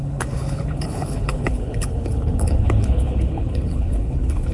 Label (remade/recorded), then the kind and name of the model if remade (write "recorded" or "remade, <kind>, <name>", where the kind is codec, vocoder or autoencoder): remade, codec, HILCodec